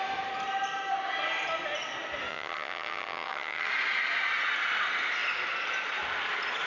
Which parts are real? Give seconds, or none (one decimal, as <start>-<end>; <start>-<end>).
0.0-2.3; 3.7-6.7